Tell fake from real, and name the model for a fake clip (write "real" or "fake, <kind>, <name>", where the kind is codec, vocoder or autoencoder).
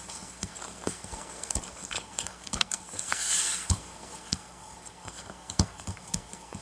fake, codec, SNAC